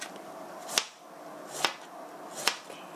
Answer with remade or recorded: recorded